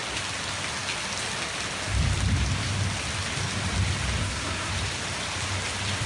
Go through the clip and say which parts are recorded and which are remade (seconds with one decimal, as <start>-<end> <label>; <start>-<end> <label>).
0.0-4.2 recorded; 4.2-4.7 remade; 4.7-6.1 recorded

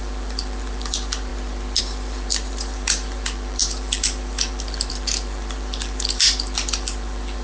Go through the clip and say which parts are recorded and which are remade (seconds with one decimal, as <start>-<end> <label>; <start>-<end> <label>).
0.0-1.3 remade; 1.3-1.8 recorded; 1.8-7.4 remade

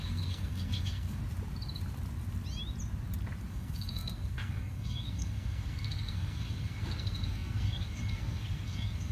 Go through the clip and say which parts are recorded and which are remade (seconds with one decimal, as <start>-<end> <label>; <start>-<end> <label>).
0.0-1.2 remade; 1.2-3.5 recorded; 3.5-9.1 remade

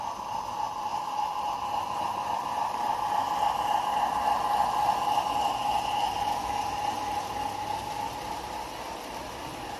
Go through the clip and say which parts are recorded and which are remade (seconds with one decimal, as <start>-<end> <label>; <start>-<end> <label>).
0.0-9.8 recorded

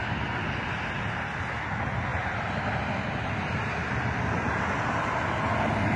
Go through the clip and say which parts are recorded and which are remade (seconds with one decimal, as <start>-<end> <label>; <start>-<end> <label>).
0.0-6.0 recorded

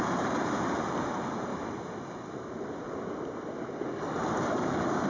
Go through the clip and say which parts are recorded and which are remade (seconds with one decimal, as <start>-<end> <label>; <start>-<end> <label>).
0.0-1.5 remade; 1.5-4.6 recorded; 4.6-5.1 remade

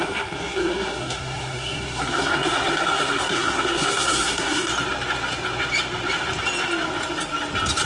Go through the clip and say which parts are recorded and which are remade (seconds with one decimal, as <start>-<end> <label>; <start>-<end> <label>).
0.0-4.7 remade; 4.7-7.9 recorded

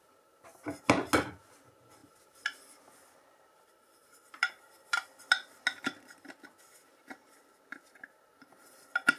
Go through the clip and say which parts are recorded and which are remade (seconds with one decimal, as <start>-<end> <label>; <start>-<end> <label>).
0.0-9.2 recorded